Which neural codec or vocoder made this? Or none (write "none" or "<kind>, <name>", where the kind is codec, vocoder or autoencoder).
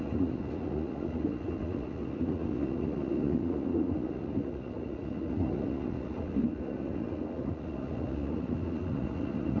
vocoder, Vocos